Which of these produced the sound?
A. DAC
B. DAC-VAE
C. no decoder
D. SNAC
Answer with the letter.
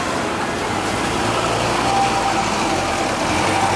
C